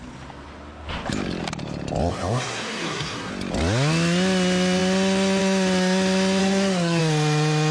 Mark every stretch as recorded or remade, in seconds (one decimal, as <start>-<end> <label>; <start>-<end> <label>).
0.0-2.1 recorded; 2.1-3.3 remade; 3.3-6.4 recorded; 6.4-7.0 remade; 7.0-7.7 recorded